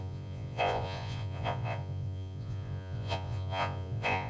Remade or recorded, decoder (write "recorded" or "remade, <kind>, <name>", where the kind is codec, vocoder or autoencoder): remade, vocoder, Vocos